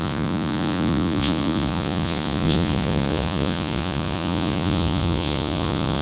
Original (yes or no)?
no